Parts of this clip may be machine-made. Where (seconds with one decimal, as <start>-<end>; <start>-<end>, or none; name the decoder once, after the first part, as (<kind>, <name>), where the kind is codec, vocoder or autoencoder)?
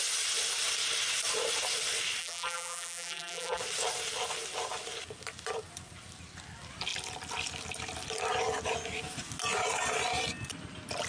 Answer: 2.2-3.6 (vocoder, BigVGAN v2)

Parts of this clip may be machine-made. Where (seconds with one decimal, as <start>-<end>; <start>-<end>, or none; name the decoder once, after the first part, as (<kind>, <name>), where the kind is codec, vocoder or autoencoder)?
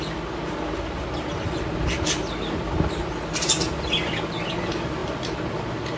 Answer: none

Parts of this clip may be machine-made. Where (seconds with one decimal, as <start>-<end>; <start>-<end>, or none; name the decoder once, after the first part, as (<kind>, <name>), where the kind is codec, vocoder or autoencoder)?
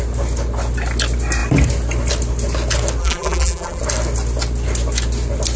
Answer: 3.0-3.8 (vocoder, BigVGAN v2)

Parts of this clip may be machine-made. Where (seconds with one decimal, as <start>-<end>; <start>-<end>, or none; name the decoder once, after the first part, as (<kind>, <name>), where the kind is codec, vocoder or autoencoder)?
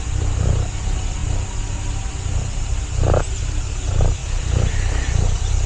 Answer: none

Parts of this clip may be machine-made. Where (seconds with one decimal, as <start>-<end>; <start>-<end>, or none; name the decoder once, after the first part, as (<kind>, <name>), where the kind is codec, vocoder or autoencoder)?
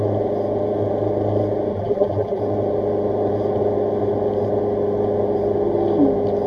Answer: 1.7-2.4 (vocoder, BigVGAN v2)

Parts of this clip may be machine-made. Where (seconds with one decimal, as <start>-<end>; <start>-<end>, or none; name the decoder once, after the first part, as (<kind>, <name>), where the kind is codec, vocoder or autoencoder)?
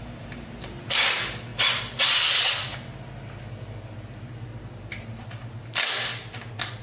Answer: 0.0-1.5 (vocoder, BigVGAN v2); 4.9-6.1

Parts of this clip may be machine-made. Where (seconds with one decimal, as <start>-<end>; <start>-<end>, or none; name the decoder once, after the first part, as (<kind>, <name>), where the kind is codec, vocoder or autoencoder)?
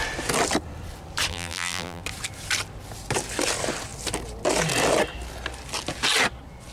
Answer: 1.3-2.0 (vocoder, BigVGAN v2)